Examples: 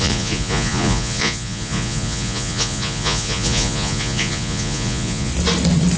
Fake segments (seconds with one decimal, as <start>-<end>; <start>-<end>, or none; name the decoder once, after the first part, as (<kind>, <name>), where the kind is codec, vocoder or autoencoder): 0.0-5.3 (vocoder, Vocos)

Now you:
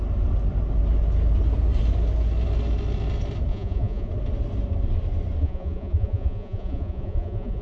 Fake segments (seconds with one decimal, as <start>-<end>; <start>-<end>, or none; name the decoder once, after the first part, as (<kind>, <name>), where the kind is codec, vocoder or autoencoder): 3.5-4.1 (vocoder, Vocos); 5.4-7.6

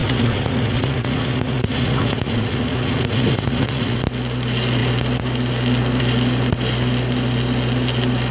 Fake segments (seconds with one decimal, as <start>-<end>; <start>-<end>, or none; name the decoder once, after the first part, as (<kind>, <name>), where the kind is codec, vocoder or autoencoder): 0.0-4.0 (vocoder, Vocos)

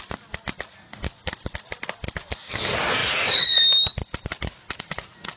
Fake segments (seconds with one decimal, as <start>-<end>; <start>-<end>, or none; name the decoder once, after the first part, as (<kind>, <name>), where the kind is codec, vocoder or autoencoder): 3.0-3.6 (vocoder, Vocos)

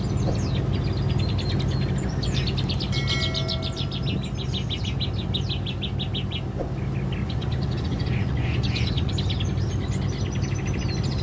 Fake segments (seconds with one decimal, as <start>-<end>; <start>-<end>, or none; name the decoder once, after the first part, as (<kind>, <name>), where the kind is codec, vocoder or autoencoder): 7.2-9.1 (vocoder, Vocos)

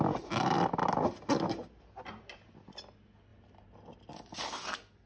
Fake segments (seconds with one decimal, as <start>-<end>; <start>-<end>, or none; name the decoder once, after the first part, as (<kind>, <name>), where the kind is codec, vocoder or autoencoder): none